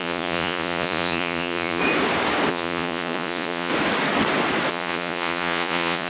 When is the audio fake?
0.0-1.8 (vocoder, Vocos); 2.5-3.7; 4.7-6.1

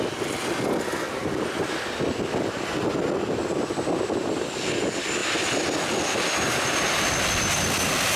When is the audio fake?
none

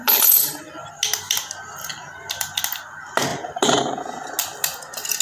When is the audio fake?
0.0-0.9 (vocoder, BigVGAN v2); 1.9-2.6